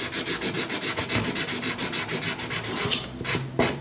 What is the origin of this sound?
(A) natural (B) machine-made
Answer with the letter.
A